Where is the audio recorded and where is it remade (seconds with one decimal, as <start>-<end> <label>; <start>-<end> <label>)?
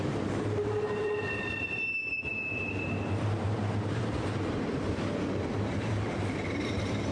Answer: 0.0-7.1 remade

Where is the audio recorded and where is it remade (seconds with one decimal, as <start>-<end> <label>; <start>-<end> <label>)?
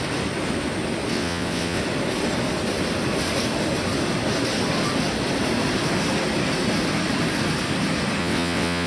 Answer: 0.0-1.1 recorded; 1.1-1.8 remade; 1.8-8.2 recorded; 8.2-8.9 remade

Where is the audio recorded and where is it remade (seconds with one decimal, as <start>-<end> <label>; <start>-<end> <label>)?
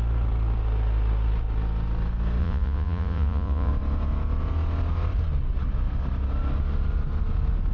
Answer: 0.0-2.4 recorded; 2.4-3.7 remade; 3.7-7.7 recorded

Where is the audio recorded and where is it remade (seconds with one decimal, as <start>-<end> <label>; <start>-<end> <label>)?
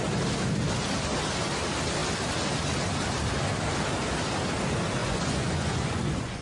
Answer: 0.0-5.0 recorded; 5.0-6.4 remade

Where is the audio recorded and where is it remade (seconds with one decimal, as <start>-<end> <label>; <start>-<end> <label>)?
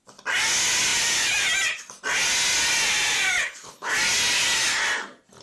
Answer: 0.0-3.4 recorded; 3.4-3.9 remade; 3.9-5.4 recorded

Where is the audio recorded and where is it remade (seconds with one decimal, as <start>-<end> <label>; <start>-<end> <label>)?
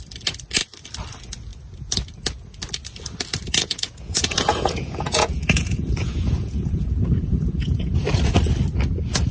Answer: 0.0-3.6 recorded; 3.6-7.9 remade; 7.9-9.3 recorded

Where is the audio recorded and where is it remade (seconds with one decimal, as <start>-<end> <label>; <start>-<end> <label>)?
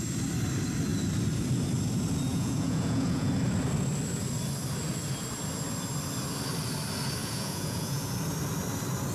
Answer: 0.0-2.3 recorded; 2.3-3.3 remade; 3.3-7.2 recorded; 7.2-8.1 remade; 8.1-9.1 recorded